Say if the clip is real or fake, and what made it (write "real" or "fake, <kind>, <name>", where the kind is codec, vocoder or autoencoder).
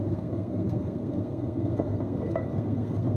fake, codec, SNAC